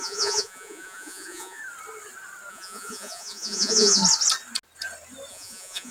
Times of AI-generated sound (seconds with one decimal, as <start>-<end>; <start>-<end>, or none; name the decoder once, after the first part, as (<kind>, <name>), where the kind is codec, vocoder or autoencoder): 0.0-1.6 (vocoder, Vocos); 2.5-4.0; 5.3-5.9